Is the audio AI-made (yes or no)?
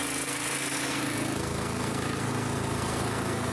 yes